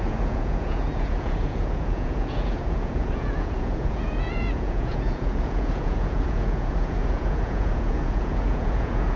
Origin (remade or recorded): remade